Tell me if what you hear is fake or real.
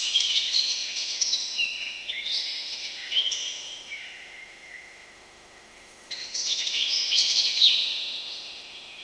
fake